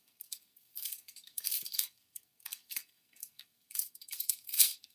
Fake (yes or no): yes